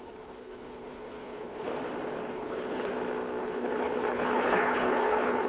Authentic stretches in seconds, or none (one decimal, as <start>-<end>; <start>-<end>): 1.7-2.3; 2.9-3.4

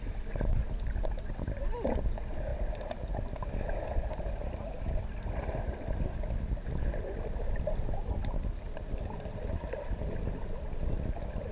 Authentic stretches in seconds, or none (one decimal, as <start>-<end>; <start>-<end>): 0.0-11.5

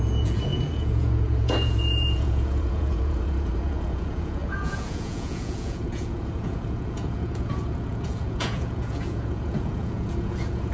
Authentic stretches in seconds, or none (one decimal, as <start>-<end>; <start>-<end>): none

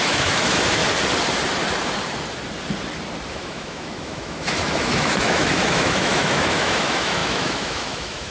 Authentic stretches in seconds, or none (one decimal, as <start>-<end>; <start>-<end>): 0.8-3.3

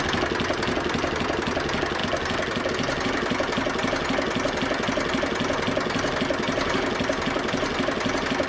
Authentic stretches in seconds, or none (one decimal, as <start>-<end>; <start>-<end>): 0.0-8.5

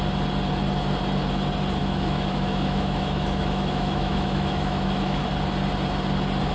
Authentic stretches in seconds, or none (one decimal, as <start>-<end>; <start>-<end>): 0.0-1.8; 5.2-6.5

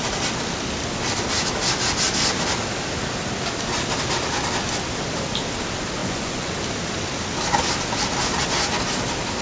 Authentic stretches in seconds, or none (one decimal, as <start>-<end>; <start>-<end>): 0.0-6.0; 6.5-9.4